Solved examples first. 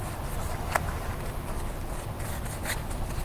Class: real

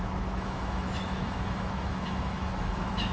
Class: fake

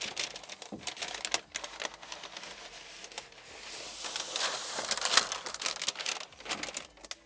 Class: real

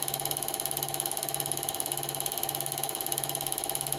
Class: fake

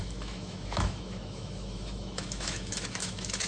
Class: fake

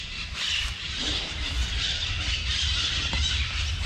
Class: real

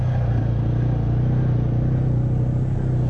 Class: real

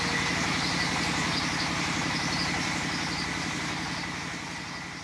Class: real